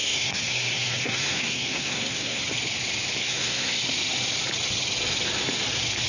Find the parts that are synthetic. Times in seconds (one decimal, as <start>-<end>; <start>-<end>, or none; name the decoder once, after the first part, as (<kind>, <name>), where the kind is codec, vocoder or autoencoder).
0.0-2.4 (codec, SNAC); 3.2-3.8